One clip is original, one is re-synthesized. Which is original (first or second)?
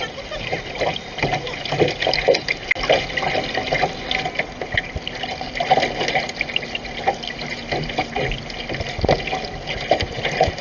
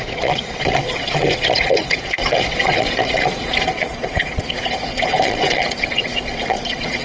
first